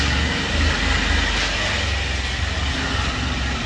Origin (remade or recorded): recorded